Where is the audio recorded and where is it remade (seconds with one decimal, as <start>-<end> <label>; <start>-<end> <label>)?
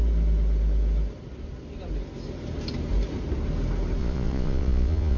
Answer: 0.0-4.0 recorded; 4.0-5.2 remade